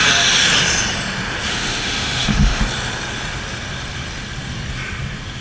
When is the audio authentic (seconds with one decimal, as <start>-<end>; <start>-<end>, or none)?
0.0-1.5; 2.6-5.4